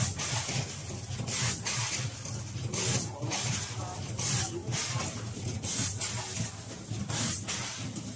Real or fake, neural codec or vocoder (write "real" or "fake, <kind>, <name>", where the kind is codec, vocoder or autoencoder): real